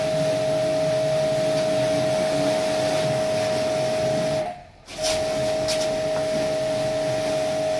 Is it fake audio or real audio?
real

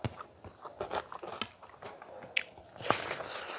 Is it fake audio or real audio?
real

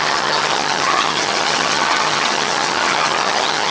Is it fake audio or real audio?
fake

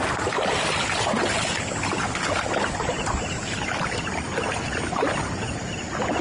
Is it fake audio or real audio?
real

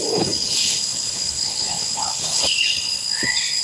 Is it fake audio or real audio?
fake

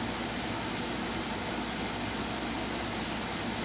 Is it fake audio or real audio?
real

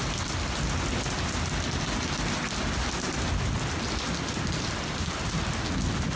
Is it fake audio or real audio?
real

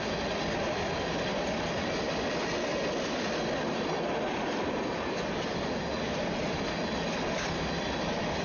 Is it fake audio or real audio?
real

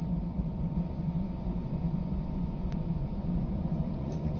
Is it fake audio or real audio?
fake